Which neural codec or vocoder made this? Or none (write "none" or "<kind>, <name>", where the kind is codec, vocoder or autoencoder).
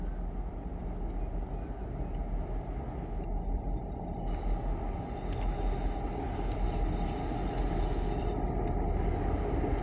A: none